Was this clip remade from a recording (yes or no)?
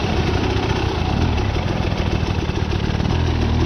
no